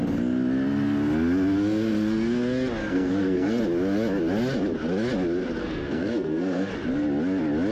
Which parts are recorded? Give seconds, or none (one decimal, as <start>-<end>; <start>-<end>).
0.0-2.8; 3.6-5.6; 6.7-7.7